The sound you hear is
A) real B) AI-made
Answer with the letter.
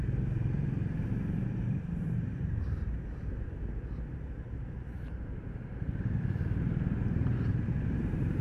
B